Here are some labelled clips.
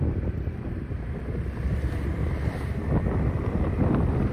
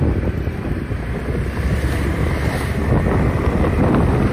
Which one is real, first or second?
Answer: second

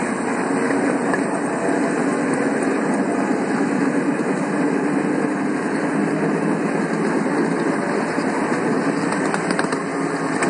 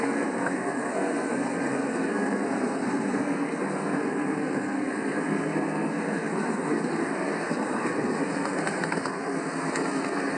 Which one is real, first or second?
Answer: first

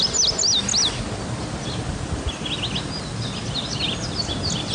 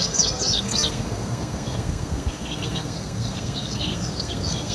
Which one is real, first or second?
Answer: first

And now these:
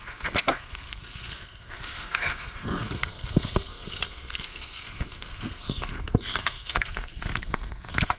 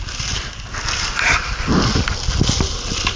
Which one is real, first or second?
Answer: second